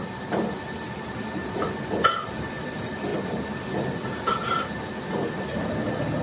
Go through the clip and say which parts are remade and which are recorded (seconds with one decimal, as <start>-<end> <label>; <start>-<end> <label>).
0.0-6.2 recorded